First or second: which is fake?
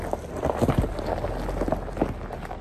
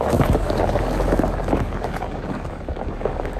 second